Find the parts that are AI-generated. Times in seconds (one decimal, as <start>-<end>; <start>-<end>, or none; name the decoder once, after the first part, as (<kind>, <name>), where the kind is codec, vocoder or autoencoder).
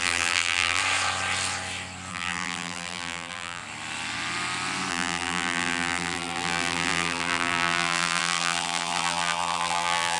0.0-0.8 (vocoder, BigVGAN v2); 2.1-3.6; 4.9-10.2